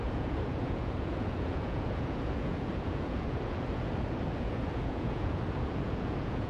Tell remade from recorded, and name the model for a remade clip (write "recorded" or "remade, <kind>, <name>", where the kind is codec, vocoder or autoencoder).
remade, vocoder, Vocos